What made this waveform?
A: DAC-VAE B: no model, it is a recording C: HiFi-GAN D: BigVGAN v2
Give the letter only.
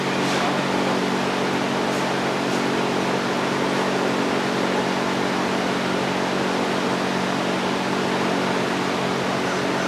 B